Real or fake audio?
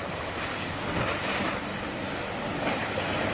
real